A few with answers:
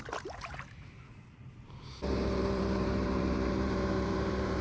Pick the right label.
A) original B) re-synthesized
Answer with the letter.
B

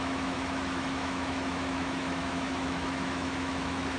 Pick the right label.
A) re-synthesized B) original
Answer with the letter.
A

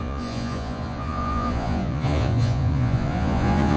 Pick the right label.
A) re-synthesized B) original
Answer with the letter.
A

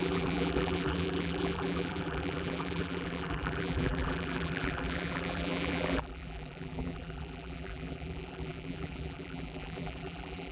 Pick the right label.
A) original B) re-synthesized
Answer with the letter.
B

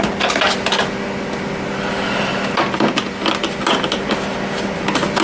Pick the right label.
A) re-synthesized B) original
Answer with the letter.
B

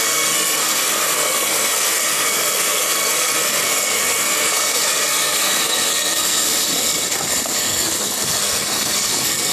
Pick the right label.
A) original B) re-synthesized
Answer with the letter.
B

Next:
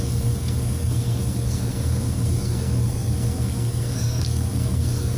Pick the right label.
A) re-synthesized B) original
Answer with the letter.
A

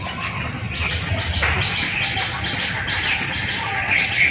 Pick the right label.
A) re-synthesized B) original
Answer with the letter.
B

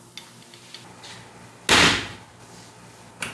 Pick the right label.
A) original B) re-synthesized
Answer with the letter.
A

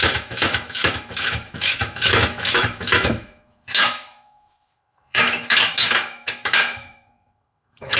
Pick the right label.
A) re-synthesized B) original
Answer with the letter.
A